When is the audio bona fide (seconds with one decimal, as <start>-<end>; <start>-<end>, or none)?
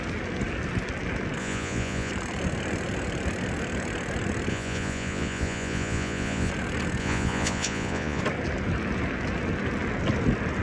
0.0-1.4; 2.1-4.5; 6.5-7.0; 8.2-10.6